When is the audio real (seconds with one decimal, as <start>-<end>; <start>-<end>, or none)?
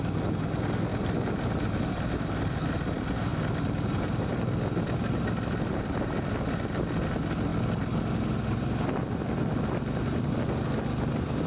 0.0-11.5